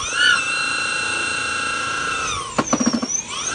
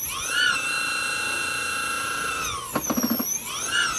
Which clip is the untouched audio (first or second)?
second